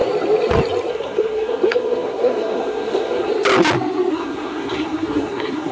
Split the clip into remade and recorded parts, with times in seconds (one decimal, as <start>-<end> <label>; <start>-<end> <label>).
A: 0.0-0.9 recorded; 0.9-3.3 remade; 3.3-4.1 recorded; 4.1-5.7 remade